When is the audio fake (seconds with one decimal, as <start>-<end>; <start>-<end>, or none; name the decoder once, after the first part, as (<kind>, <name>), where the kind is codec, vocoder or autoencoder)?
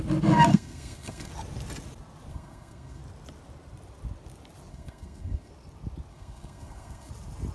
0.5-1.3 (codec, SNAC); 2.3-3.0; 4.7-5.5; 6.1-7.1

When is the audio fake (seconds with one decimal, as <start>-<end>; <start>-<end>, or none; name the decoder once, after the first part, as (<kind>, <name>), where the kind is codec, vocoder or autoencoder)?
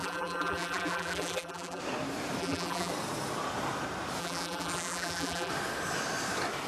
0.0-1.8 (vocoder, BigVGAN v2); 2.4-2.9; 4.2-5.5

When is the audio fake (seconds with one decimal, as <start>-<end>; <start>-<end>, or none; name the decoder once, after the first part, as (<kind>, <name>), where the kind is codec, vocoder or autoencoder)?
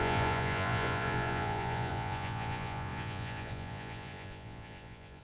0.0-5.2 (vocoder, Vocos)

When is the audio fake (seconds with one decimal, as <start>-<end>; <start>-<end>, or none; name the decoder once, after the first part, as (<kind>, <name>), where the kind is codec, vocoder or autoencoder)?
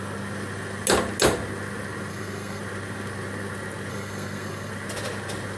2.1-2.6 (codec, SNAC); 3.9-4.7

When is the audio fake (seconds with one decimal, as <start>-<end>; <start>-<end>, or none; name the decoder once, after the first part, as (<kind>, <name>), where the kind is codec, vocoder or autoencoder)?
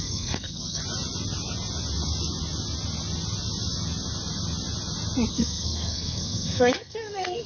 0.0-0.8 (codec, SNAC); 5.3-7.5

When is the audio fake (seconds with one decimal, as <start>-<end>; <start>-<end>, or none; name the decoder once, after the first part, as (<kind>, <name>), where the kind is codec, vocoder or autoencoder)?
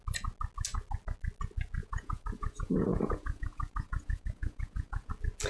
1.8-5.1 (vocoder, Vocos)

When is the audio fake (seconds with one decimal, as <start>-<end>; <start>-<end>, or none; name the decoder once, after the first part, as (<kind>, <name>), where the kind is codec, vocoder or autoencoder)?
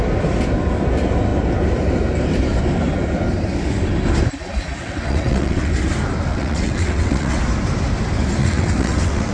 4.8-5.7 (vocoder, WaveNeXt); 6.3-7.4; 8.4-9.3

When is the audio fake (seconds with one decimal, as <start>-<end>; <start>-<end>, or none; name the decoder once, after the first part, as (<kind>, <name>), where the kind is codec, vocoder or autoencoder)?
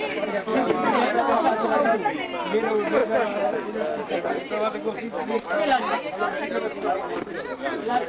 none